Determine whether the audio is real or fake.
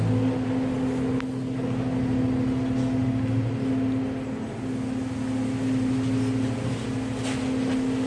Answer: real